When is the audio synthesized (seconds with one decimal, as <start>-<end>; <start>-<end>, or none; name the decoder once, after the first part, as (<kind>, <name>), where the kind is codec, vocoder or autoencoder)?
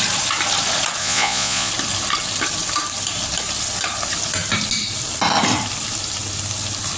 1.0-1.7 (vocoder, Vocos)